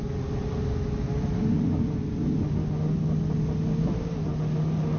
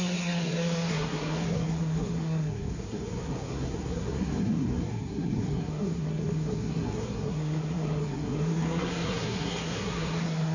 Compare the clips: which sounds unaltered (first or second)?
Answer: first